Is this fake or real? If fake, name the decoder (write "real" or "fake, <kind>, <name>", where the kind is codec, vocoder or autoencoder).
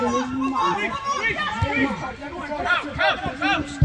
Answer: real